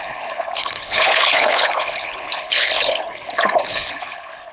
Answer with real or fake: fake